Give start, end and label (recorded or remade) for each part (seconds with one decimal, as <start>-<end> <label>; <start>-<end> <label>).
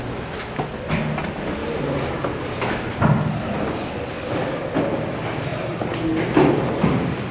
0.0-7.3 recorded